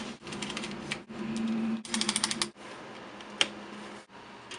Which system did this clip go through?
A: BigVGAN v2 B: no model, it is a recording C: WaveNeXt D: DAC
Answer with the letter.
B